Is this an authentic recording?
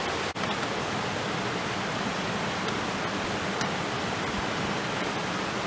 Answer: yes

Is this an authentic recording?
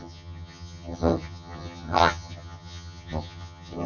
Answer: no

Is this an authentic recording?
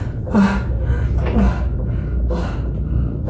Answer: yes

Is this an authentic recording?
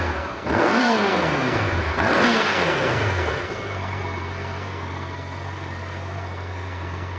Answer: no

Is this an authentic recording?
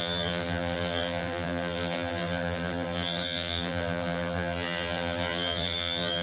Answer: no